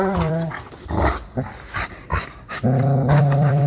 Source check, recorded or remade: remade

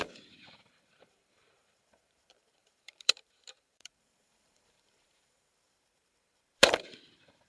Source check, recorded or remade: remade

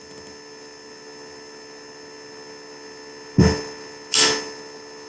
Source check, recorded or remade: recorded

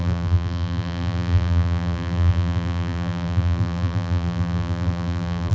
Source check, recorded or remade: remade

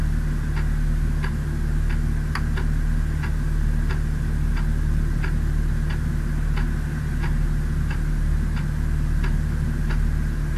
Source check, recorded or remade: recorded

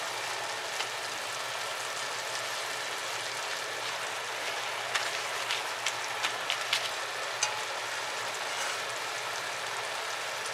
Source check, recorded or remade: recorded